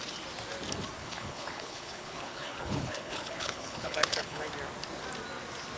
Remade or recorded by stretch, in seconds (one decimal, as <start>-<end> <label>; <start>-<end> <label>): 0.0-1.0 recorded; 1.0-4.5 remade; 4.5-5.8 recorded